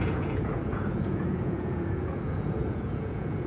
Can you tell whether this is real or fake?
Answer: fake